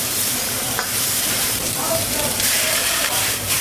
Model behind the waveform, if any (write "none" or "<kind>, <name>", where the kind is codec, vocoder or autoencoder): vocoder, BigVGAN v2